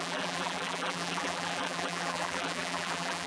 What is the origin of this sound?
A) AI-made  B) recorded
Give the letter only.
A